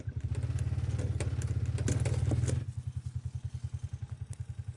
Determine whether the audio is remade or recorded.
recorded